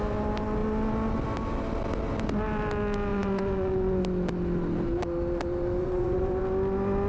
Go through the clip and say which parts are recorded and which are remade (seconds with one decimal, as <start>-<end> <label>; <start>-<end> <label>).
0.0-3.1 recorded; 3.1-4.0 remade; 4.0-5.8 recorded; 5.8-6.4 remade; 6.4-7.1 recorded